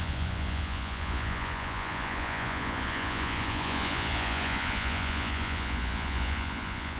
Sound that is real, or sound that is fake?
fake